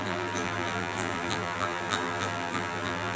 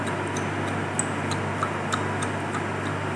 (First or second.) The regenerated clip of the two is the first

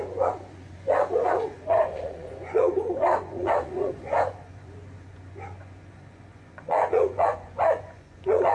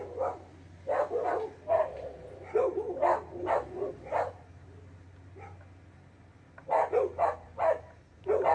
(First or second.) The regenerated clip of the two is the first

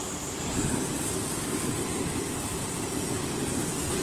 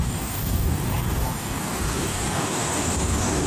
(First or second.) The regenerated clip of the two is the second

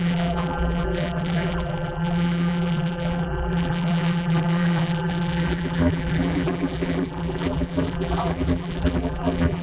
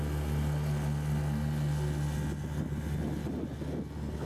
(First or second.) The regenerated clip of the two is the first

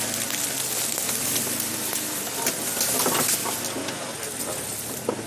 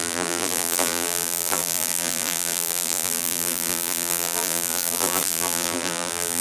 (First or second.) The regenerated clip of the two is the second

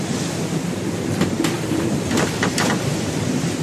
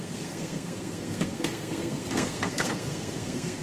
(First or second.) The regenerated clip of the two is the second